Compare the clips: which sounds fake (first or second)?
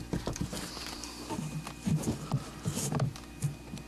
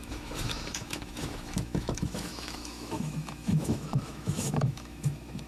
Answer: second